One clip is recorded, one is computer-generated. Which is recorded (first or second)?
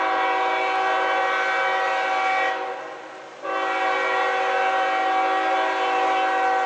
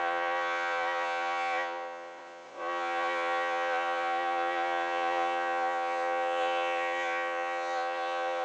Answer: first